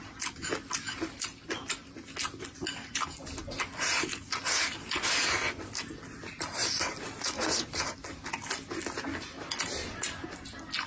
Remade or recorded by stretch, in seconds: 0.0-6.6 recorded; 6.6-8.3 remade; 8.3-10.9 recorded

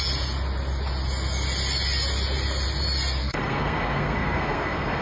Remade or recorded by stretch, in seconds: 0.0-3.2 recorded; 3.2-5.0 remade

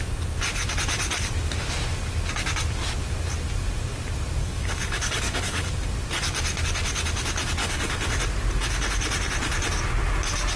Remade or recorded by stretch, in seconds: 0.0-4.4 recorded; 4.4-5.7 remade; 5.7-7.6 recorded; 7.6-8.2 remade; 8.2-10.6 recorded